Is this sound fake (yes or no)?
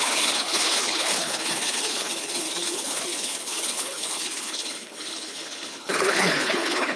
yes